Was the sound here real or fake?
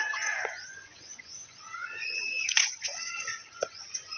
fake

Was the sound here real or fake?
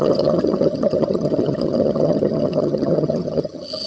fake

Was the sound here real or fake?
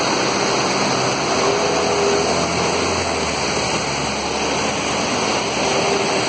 real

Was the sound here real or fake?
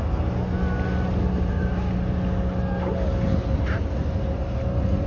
real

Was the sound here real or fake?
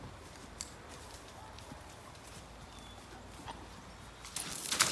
real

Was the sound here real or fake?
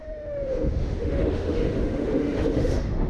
fake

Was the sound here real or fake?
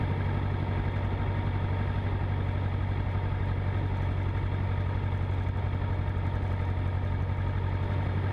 real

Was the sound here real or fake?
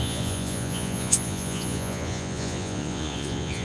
fake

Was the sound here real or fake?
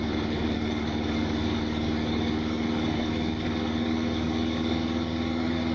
fake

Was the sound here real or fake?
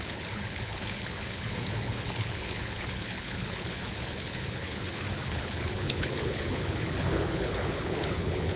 fake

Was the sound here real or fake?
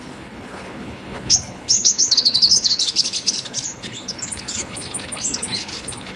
fake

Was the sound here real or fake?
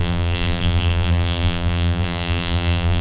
fake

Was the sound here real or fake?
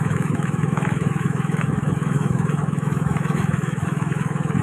fake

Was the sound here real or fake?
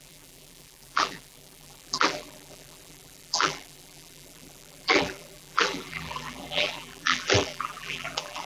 fake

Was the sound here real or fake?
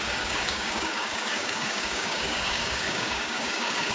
fake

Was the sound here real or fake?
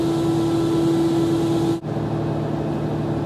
real